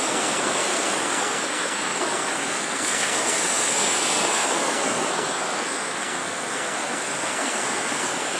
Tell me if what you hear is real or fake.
fake